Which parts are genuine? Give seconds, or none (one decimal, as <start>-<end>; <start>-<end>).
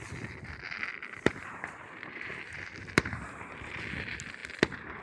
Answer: 0.0-1.0; 3.8-5.0